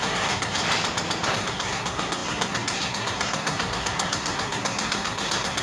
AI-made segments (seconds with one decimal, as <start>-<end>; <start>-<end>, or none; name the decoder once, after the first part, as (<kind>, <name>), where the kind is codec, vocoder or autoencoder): 0.0-0.6 (codec, SNAC); 1.3-5.6